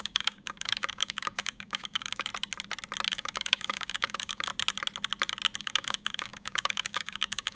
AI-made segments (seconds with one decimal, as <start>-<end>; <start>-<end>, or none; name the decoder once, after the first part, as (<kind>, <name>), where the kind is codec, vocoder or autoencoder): 0.0-2.3 (codec, DAC); 3.1-4.5; 5.6-7.6